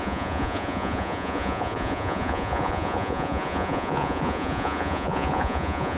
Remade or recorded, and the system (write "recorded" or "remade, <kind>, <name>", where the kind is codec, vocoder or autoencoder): remade, vocoder, Vocos